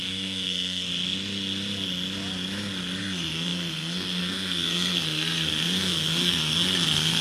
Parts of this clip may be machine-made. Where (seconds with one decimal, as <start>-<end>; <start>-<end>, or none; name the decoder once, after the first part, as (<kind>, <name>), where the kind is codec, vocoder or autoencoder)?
0.0-0.9 (codec, SNAC); 3.0-7.2